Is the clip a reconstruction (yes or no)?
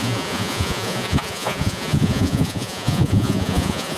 yes